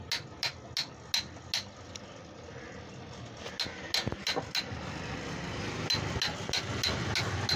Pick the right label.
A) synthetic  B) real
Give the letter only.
B